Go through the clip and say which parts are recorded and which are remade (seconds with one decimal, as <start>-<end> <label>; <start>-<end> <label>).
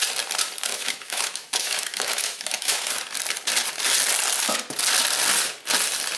0.0-0.7 recorded; 0.7-2.9 remade; 2.9-6.2 recorded